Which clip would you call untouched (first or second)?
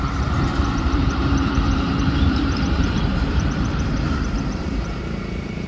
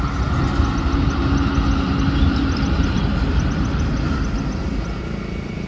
second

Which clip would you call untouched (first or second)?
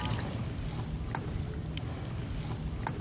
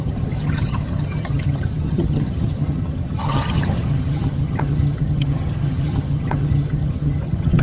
first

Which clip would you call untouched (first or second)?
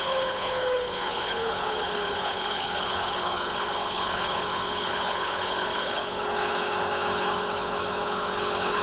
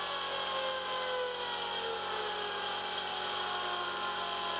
second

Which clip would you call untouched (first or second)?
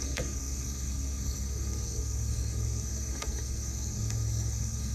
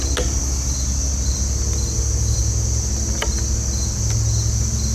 second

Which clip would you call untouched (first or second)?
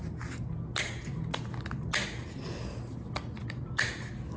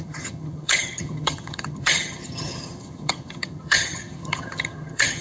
first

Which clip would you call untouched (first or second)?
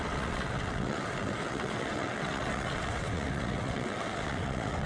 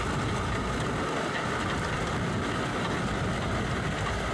second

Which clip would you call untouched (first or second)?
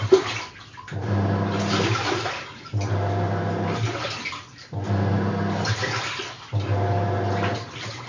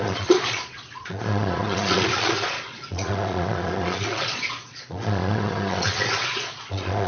first